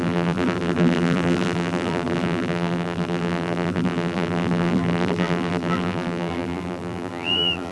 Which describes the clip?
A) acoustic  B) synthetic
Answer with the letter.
B